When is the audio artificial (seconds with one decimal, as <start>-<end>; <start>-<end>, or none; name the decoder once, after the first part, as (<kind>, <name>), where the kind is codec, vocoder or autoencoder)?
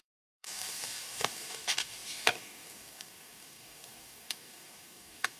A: 0.0-5.4 (codec, DAC)